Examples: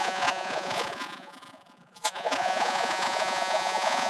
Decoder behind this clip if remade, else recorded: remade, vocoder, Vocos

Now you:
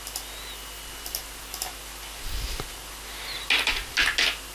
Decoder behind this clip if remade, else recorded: recorded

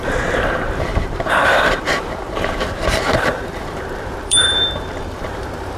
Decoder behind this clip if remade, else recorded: remade, vocoder, BigVGAN v2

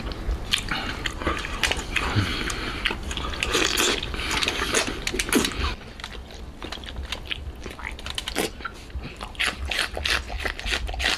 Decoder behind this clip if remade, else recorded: recorded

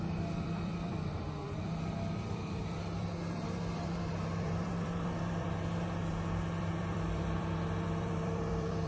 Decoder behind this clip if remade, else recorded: remade, vocoder, BigVGAN v2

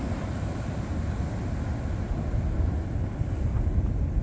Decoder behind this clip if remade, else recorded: recorded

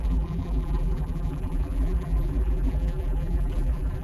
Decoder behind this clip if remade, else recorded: remade, vocoder, BigVGAN v2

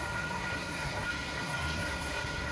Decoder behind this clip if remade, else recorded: remade, codec, SNAC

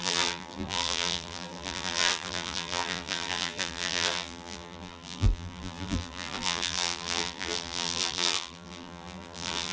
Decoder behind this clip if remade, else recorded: remade, vocoder, BigVGAN v2